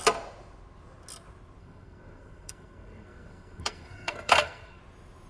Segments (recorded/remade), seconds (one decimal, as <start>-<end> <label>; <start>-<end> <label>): 0.0-1.6 recorded; 1.6-4.8 remade; 4.8-5.3 recorded